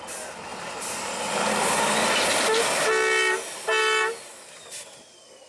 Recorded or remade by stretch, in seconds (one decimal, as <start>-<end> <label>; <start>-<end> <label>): 0.0-5.5 recorded